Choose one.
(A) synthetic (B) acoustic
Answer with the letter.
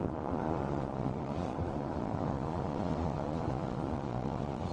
A